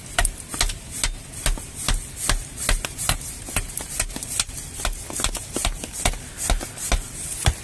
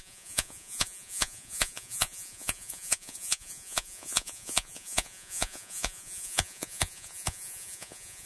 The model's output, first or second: second